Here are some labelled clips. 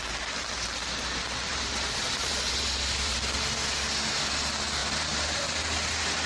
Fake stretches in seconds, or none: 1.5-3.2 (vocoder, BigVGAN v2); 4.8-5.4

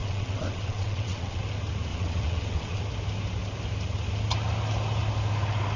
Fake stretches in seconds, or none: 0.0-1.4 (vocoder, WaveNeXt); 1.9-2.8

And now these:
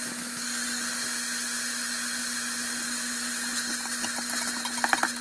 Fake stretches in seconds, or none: none

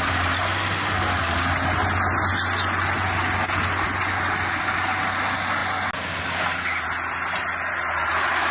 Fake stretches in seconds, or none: none

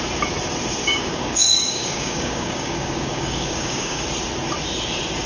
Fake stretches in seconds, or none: 0.8-4.0 (codec, DAC)